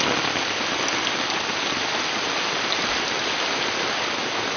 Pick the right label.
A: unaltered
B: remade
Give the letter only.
A